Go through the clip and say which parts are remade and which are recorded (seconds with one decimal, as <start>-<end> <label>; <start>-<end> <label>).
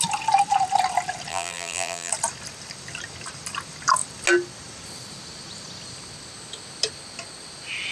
0.0-1.3 recorded; 1.3-2.1 remade; 2.1-7.9 recorded